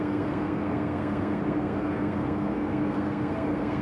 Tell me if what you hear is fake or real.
fake